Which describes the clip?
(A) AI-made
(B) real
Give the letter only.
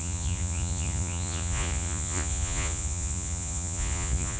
A